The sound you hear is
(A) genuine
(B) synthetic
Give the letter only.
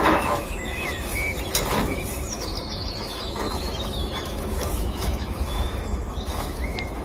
B